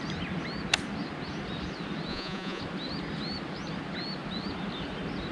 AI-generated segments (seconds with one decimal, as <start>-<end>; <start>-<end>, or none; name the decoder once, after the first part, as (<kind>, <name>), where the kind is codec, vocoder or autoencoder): 2.1-2.6 (vocoder, Vocos)